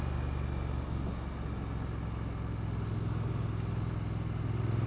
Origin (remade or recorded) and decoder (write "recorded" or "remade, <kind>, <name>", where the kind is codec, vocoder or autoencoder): recorded